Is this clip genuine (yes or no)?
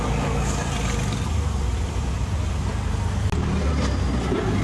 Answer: yes